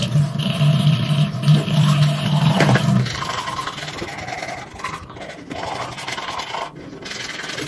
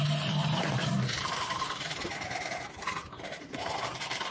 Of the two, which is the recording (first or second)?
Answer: first